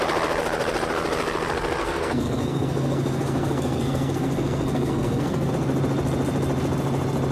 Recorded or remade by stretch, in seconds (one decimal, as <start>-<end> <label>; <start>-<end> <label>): 0.0-1.8 recorded; 1.8-5.5 remade; 5.5-7.3 recorded